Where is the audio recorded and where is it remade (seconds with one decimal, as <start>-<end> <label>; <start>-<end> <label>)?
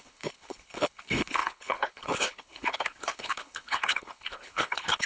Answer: 0.0-5.1 remade